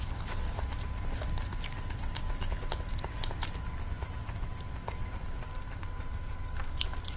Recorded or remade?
recorded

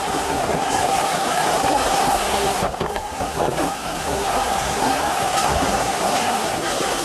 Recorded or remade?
remade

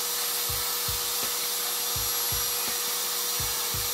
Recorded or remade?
recorded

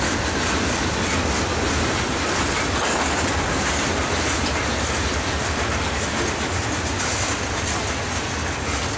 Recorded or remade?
recorded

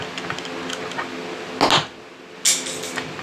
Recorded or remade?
recorded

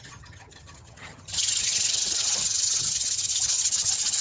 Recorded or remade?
remade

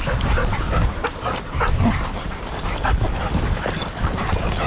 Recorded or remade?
recorded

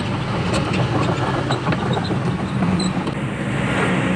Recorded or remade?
recorded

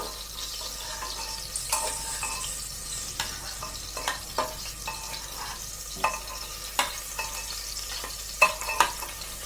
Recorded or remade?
recorded